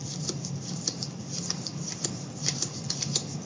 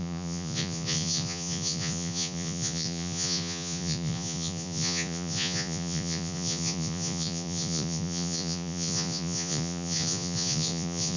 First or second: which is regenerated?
second